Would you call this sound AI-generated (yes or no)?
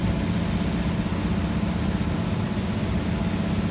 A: no